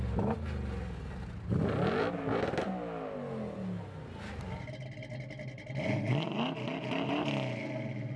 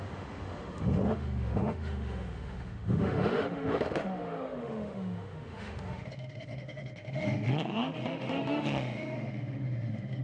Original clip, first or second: first